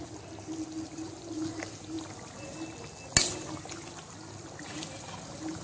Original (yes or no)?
yes